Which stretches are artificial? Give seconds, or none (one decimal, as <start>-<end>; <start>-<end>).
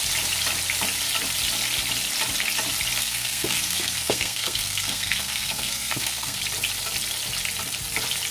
3.0-6.4